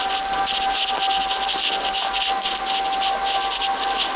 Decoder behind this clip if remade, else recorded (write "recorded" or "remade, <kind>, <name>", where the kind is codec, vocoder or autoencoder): recorded